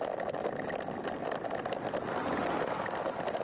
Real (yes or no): yes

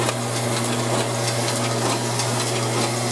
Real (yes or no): yes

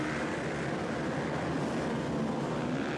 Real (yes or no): yes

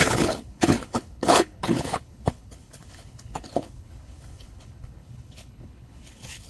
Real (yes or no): no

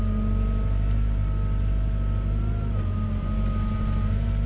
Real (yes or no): yes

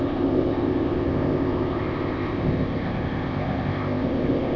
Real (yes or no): no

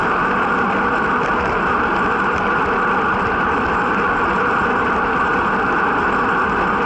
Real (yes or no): yes